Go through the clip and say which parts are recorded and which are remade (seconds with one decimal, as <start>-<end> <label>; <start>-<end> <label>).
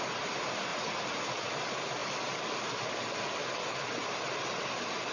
0.0-0.7 recorded; 0.7-1.5 remade; 1.5-5.1 recorded